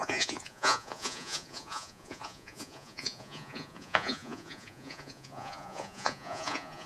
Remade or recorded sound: remade